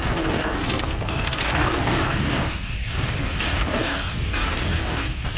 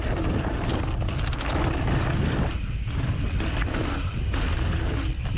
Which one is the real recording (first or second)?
second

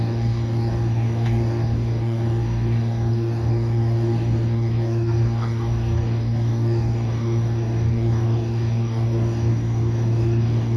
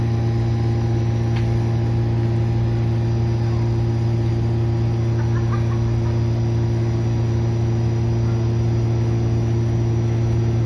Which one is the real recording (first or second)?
second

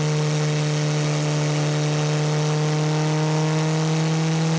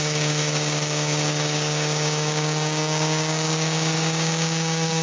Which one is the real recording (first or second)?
first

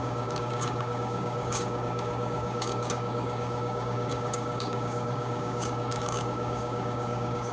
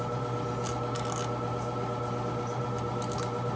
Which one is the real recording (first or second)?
second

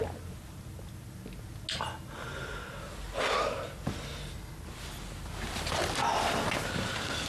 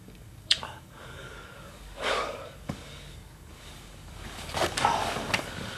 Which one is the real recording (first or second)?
first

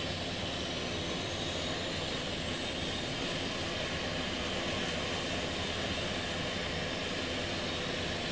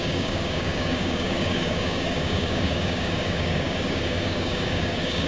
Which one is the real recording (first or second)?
first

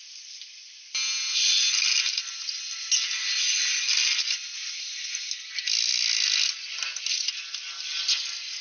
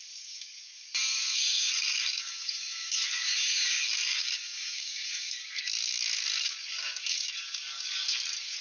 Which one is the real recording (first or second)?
first